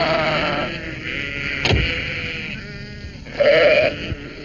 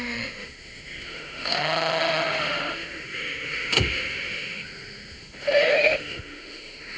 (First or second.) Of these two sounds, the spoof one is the second